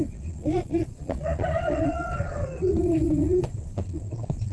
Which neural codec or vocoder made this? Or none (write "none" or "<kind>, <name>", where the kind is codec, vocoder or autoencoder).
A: vocoder, Vocos